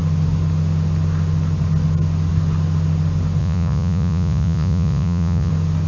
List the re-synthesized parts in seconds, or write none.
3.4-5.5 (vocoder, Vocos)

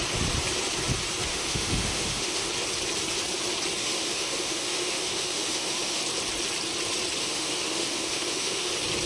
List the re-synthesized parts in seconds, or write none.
1.3-2.5 (autoencoder, DAC-VAE); 3.8-6.0; 7.2-8.7